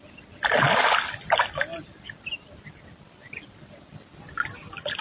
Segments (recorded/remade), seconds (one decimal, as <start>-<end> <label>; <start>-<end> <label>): 0.0-5.0 recorded